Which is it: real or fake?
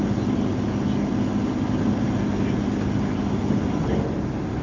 real